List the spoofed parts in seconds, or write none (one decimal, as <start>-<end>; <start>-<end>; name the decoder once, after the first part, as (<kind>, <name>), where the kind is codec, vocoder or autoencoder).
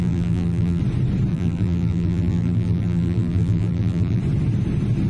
0.0-0.8 (vocoder, BigVGAN v2); 1.3-4.2